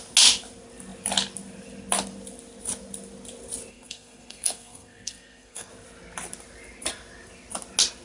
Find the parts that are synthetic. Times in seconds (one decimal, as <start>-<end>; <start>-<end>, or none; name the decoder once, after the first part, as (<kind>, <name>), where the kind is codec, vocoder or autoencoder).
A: 3.7-5.7 (codec, SNAC)